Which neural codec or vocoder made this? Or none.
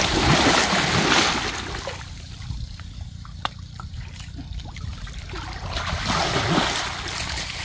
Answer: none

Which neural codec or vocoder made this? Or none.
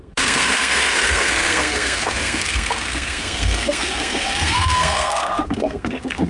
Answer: codec, SNAC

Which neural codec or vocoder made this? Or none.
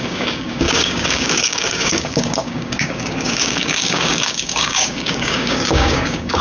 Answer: codec, DAC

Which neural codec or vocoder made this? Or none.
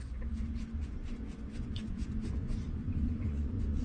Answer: vocoder, Vocos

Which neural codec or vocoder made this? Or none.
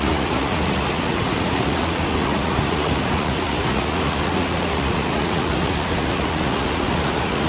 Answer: vocoder, Vocos